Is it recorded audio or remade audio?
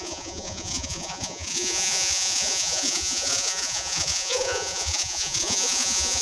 remade